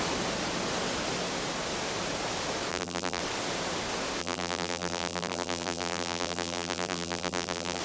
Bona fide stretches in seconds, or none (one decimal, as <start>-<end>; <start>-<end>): 0.0-2.7; 3.2-4.2